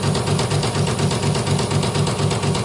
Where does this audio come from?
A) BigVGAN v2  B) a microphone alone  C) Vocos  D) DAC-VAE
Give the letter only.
B